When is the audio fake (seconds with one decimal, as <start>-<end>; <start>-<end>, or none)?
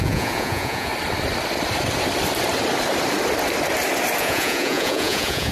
0.0-0.9; 4.2-5.5